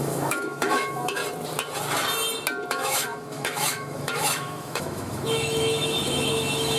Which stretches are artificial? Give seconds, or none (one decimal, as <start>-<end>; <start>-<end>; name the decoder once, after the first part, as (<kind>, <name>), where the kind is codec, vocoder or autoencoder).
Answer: 0.0-1.2 (autoencoder, DAC-VAE); 2.7-6.8